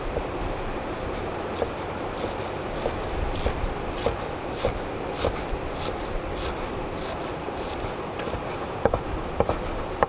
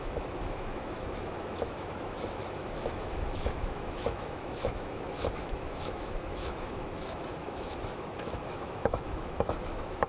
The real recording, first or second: first